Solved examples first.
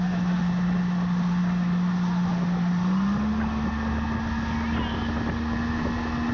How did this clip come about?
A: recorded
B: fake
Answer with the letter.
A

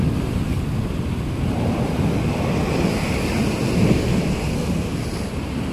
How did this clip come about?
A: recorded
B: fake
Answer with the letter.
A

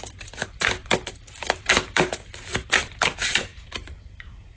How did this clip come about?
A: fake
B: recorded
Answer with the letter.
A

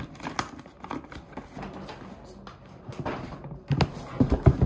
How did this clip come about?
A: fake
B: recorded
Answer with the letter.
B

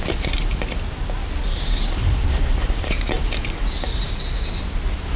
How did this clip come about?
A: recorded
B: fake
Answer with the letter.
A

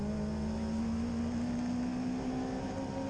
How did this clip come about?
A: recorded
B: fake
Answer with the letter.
A